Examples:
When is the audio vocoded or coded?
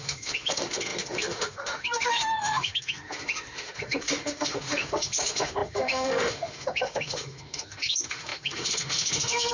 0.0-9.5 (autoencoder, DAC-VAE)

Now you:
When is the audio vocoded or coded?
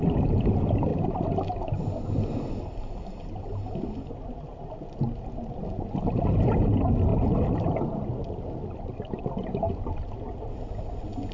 none